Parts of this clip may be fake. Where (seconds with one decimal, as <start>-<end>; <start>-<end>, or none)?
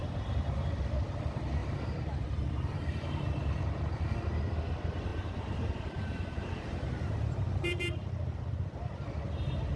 1.6-3.2; 5.1-8.8